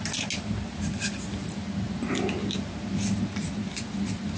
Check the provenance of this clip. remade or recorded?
recorded